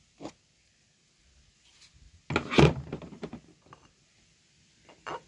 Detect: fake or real real